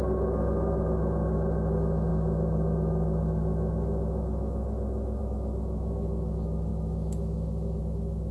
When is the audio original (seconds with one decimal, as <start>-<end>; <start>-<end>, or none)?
none